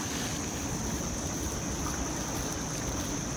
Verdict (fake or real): real